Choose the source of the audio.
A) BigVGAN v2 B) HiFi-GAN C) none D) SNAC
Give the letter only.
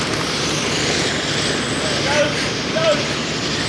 A